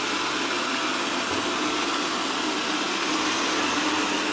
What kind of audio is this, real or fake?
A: real